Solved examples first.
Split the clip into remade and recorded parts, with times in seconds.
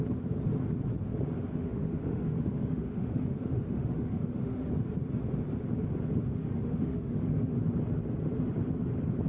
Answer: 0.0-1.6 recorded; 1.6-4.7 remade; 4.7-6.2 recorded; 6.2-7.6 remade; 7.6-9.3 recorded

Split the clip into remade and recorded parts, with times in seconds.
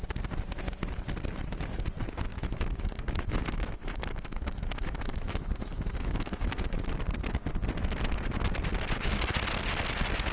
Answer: 0.0-2.3 recorded; 2.3-6.9 remade; 6.9-10.3 recorded